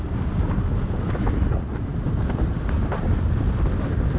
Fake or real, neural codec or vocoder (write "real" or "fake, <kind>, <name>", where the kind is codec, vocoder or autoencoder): real